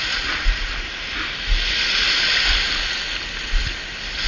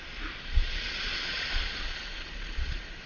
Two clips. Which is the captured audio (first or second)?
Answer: first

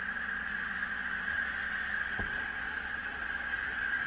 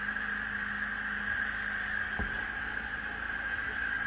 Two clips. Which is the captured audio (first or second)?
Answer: second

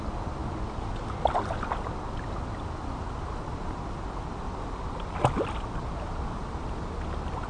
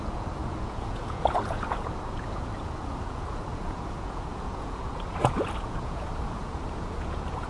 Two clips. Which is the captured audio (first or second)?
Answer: first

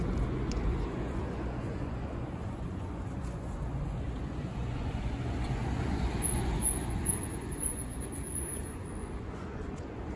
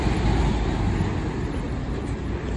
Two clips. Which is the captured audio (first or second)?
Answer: second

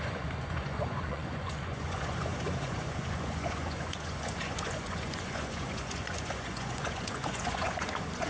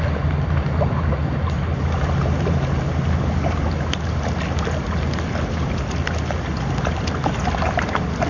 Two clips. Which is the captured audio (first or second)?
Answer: second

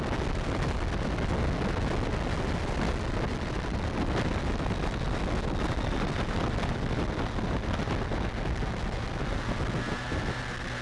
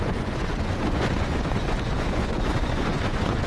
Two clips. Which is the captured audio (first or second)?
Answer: first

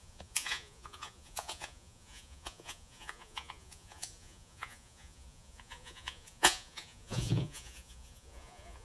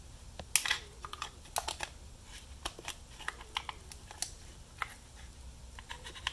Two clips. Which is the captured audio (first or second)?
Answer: second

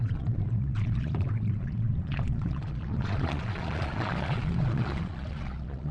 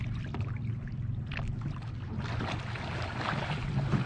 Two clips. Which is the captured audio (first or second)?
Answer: second